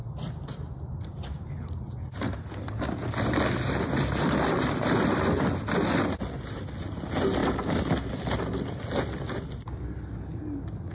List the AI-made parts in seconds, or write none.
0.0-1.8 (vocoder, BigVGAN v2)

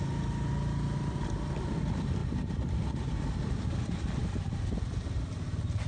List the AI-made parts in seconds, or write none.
none

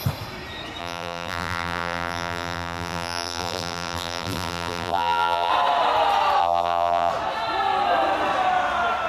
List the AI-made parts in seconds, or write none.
0.8-5.5 (vocoder, BigVGAN v2); 6.4-7.1

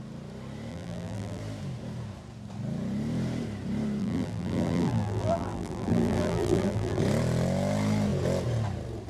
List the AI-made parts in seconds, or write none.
0.7-1.4 (vocoder, BigVGAN v2); 4.0-7.0

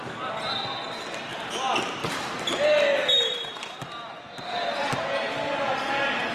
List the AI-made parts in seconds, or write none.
none